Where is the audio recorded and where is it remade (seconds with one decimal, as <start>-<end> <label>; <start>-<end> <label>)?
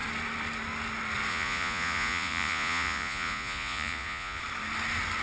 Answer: 0.0-1.3 recorded; 1.3-4.4 remade; 4.4-5.2 recorded